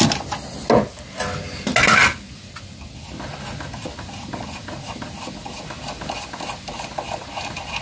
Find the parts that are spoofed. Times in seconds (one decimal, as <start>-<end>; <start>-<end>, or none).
none